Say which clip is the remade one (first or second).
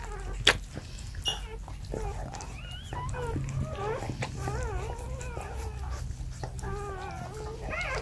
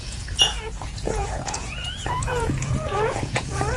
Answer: second